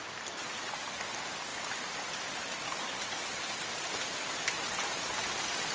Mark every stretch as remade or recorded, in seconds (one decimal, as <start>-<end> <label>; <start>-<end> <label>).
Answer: 0.0-5.7 recorded